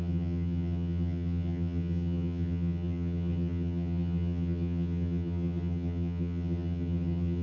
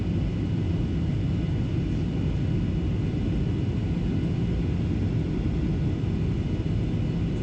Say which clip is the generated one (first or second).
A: first